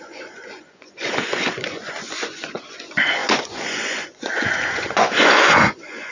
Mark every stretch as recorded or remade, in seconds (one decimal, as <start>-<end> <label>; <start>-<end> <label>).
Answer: 0.0-6.1 remade